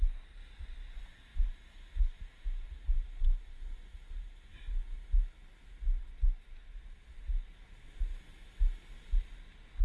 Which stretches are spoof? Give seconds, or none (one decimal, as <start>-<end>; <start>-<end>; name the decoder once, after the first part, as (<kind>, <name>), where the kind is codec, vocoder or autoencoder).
none